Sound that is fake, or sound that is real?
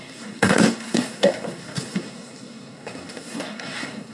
fake